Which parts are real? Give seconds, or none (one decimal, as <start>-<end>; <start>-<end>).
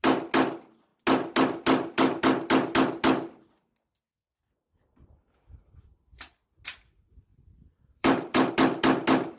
0.0-7.3; 8.5-9.4